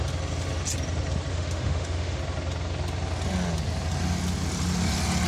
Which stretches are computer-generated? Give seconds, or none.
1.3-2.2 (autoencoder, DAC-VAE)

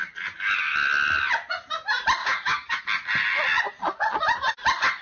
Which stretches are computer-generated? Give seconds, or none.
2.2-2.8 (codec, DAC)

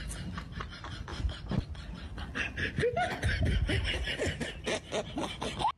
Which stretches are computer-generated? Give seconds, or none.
none

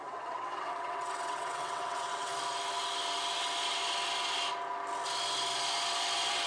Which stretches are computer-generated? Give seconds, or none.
0.0-2.3 (vocoder, WaveNeXt)